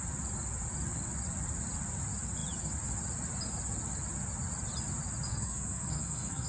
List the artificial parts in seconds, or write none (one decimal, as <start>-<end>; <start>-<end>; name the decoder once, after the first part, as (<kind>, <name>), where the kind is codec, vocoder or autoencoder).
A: 5.3-6.5 (codec, SNAC)